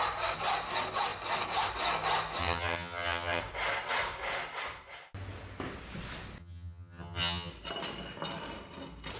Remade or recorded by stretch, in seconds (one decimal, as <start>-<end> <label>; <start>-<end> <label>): 0.0-2.4 recorded; 2.4-3.4 remade; 3.4-6.4 recorded; 6.4-7.5 remade; 7.5-9.2 recorded